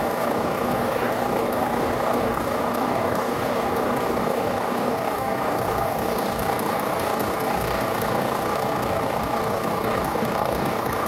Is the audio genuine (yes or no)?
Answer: no